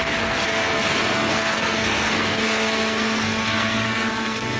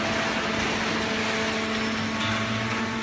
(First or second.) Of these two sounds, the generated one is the first